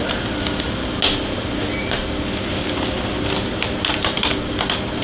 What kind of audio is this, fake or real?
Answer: real